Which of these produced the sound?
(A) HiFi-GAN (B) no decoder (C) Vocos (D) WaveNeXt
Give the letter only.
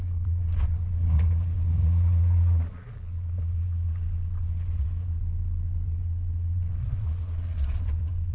C